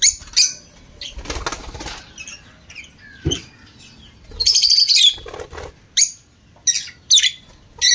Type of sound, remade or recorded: recorded